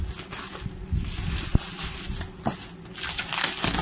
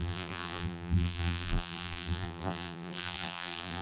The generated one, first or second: second